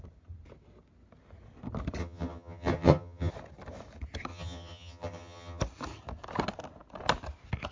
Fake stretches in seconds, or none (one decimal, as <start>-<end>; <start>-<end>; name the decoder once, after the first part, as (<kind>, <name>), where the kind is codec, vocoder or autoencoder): 2.0-3.3 (vocoder, HiFi-GAN); 4.3-5.6